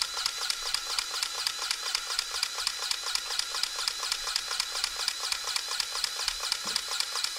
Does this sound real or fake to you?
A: real